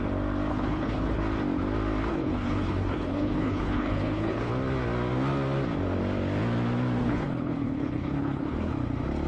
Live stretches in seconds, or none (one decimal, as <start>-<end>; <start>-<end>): 0.0-0.5; 1.2-2.1; 4.5-7.0; 8.7-9.3